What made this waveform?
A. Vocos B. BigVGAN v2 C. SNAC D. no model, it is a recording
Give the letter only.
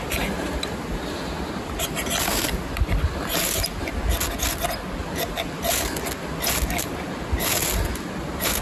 D